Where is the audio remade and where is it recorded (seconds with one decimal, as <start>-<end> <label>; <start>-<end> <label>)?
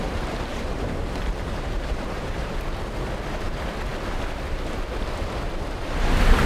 0.0-0.5 recorded; 0.5-2.5 remade; 2.5-6.5 recorded